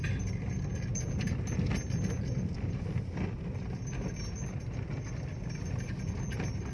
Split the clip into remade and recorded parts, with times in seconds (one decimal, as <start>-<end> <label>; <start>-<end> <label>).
0.0-6.7 recorded

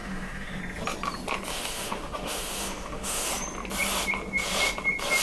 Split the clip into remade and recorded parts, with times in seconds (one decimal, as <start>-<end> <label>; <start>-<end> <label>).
0.0-0.6 remade; 0.6-1.5 recorded; 1.5-3.3 remade; 3.3-5.2 recorded

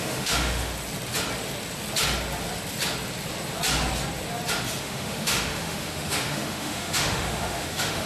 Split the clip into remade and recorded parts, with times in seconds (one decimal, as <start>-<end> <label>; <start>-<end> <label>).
0.0-0.7 remade; 0.7-4.8 recorded; 4.8-8.1 remade

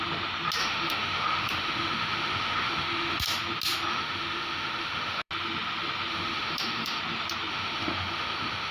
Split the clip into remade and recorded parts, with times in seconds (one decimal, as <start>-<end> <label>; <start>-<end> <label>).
0.0-0.6 recorded; 0.6-3.2 remade; 3.2-3.9 recorded; 3.9-5.3 remade; 5.3-6.1 recorded; 6.1-7.0 remade; 7.0-7.5 recorded; 7.5-8.7 remade

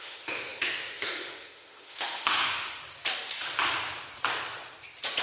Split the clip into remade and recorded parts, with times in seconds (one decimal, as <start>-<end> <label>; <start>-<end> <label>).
0.0-2.8 remade; 2.8-5.2 recorded

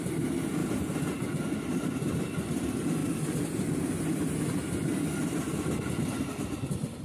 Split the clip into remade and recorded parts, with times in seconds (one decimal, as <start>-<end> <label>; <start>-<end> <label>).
0.0-7.0 recorded

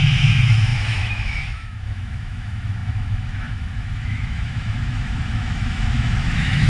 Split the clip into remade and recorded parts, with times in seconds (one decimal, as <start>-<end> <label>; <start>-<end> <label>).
0.0-6.7 remade